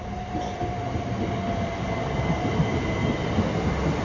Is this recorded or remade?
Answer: recorded